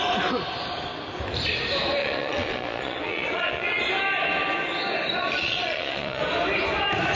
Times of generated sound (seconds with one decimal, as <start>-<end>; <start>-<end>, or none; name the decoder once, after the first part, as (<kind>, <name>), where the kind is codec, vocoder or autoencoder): 2.0-3.8 (vocoder, Vocos); 5.2-6.2